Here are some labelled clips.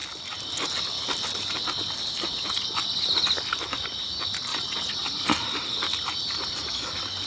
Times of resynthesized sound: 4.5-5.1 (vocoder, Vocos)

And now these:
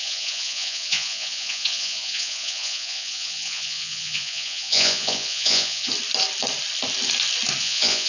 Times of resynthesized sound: 0.0-5.9 (vocoder, Vocos); 7.6-8.1

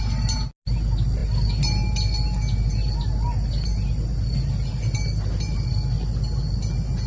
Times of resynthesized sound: none

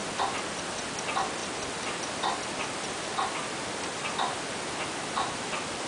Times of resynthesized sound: 1.4-4.0 (vocoder, BigVGAN v2)

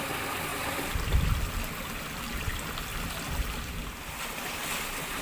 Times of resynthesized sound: 0.5-2.4 (vocoder, BigVGAN v2); 2.9-3.9

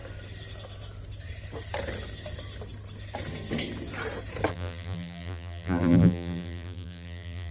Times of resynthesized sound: 4.5-7.5 (vocoder, BigVGAN v2)

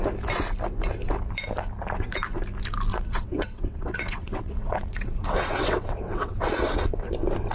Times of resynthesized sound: 2.9-7.1 (vocoder, WaveNeXt)

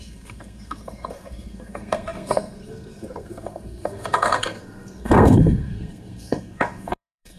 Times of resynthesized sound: 0.0-7.4 (codec, SNAC)